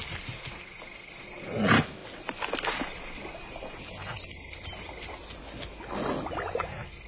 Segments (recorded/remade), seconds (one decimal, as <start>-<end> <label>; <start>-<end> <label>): 0.0-7.1 recorded